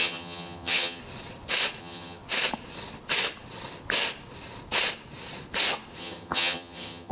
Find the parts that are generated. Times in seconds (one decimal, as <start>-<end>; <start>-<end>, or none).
0.0-1.0; 1.8-2.2; 6.0-7.1